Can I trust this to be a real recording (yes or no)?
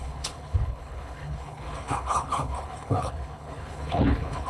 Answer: no